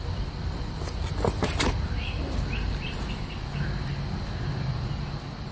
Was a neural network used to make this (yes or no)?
no